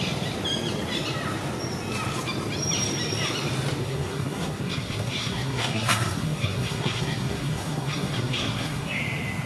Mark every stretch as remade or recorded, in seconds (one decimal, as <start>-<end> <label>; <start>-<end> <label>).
0.0-3.8 recorded; 3.8-9.0 remade; 9.0-9.5 recorded